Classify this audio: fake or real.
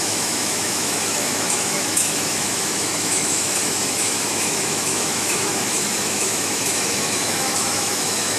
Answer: fake